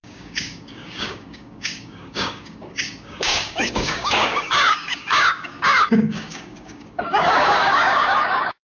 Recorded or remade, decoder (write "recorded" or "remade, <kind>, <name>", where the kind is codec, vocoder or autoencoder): remade, codec, DAC